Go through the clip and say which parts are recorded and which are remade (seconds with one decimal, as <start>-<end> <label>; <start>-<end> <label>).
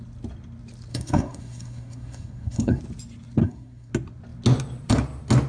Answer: 0.0-0.9 recorded; 0.9-2.8 remade; 2.8-3.4 recorded; 3.4-3.9 remade; 3.9-5.5 recorded